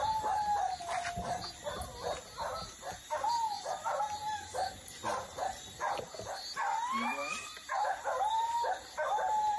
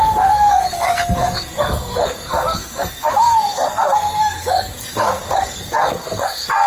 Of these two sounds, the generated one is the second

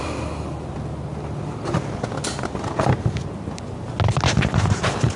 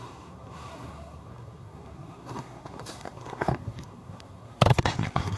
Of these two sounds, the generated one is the second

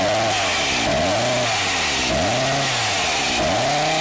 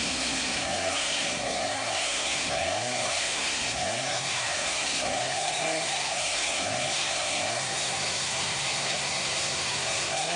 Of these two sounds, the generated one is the second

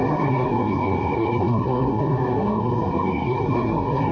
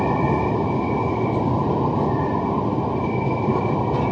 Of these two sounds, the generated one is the first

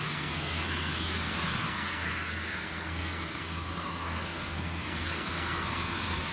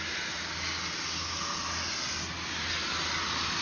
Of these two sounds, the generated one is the first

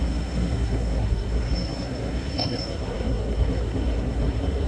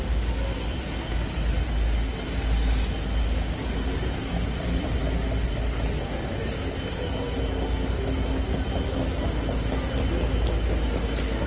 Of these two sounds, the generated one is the first